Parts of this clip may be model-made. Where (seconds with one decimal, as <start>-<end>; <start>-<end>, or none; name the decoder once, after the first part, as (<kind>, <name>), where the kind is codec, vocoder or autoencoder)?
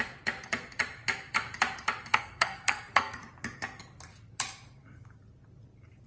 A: 2.1-3.2 (codec, SNAC)